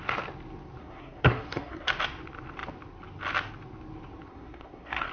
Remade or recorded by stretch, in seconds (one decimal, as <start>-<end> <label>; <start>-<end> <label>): 0.0-0.8 recorded; 0.8-1.9 remade; 1.9-4.3 recorded; 4.3-5.1 remade